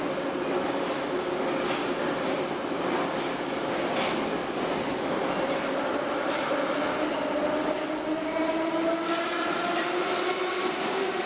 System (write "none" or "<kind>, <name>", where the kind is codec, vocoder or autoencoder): none